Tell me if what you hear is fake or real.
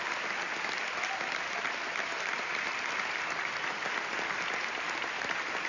real